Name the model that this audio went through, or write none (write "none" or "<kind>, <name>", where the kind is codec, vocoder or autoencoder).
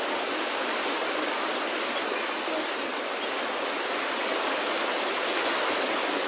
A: none